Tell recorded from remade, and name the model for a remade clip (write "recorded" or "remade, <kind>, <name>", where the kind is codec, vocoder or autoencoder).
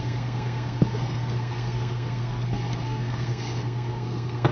remade, codec, SNAC